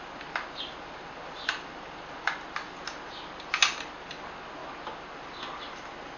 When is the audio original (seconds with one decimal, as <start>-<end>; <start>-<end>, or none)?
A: 0.0-6.2

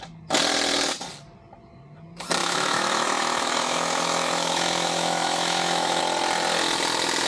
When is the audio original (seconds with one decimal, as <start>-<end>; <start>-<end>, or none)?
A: 0.0-2.4; 6.0-7.3

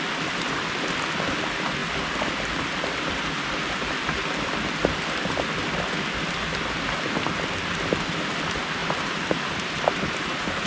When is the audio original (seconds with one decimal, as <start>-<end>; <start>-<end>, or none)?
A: 0.0-8.8